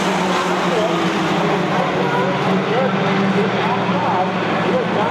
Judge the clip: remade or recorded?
recorded